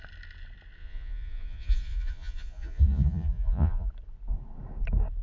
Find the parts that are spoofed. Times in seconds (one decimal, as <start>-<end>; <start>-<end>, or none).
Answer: 0.8-3.9